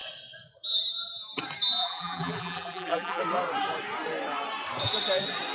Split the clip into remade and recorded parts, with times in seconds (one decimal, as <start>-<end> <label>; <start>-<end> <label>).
0.0-1.8 recorded; 1.8-3.2 remade; 3.2-5.5 recorded